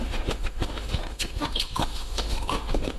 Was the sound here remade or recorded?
remade